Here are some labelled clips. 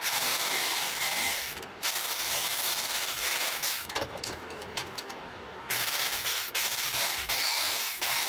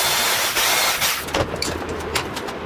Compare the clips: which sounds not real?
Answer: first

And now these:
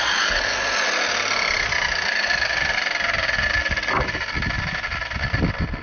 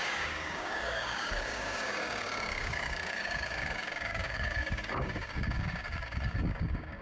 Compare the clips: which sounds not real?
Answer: second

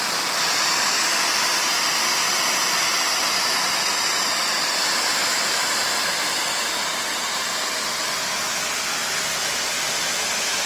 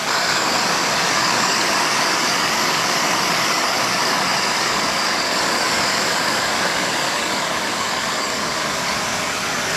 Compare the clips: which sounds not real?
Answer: second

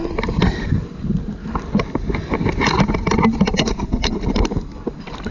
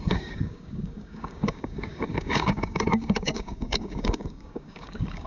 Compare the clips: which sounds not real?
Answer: second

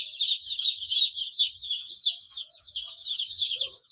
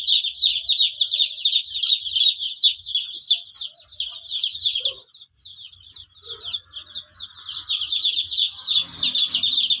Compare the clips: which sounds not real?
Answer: first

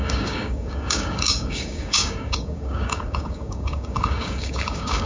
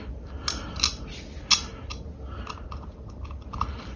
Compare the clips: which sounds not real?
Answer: first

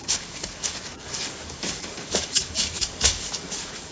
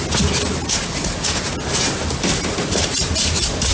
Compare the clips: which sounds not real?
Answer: first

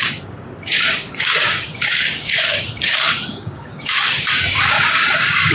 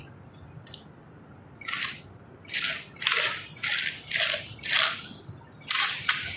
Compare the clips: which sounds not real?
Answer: first